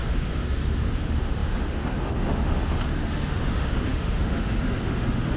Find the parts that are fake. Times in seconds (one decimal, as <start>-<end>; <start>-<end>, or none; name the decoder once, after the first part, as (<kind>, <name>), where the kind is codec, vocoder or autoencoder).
0.0-5.4 (autoencoder, DAC-VAE)